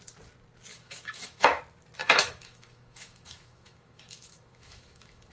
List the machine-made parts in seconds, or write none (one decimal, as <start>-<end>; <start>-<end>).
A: 0.7-1.6; 2.0-5.3